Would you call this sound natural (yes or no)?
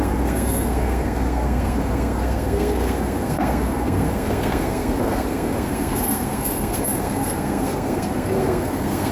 no